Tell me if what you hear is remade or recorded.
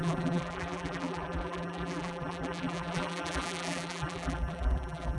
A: remade